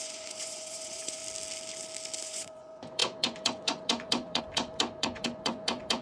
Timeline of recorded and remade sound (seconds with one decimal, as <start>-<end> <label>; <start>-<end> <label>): 0.0-1.2 remade; 1.2-2.2 recorded; 2.2-6.0 remade